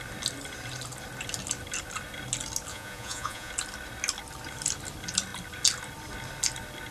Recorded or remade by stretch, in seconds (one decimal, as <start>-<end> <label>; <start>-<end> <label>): 0.0-2.7 recorded; 2.7-3.5 remade; 3.5-6.9 recorded